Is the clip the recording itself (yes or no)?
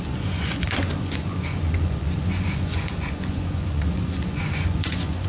no